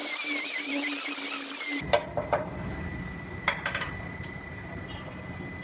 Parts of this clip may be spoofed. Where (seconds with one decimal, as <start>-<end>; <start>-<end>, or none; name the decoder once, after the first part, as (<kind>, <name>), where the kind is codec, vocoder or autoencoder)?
0.0-0.7 (vocoder, BigVGAN v2)